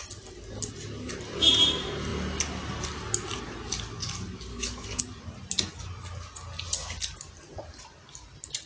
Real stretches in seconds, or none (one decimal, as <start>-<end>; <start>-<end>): 0.0-4.5; 5.0-8.7

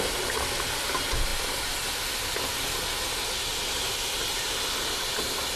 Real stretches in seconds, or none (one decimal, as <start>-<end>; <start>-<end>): 0.0-5.6